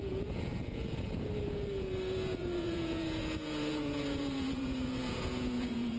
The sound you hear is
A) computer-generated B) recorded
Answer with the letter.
A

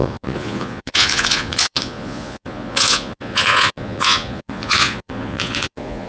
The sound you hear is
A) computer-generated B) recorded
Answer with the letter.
A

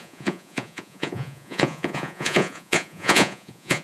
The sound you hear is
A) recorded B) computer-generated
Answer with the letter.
B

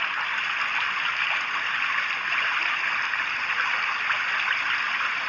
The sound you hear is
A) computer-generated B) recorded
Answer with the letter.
B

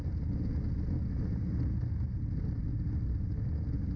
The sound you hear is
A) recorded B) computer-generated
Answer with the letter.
A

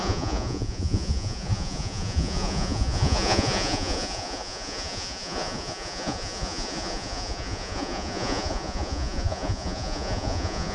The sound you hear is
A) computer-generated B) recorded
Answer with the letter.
A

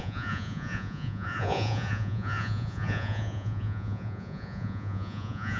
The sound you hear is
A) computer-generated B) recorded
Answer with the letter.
A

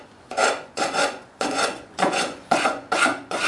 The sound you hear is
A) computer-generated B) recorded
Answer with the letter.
A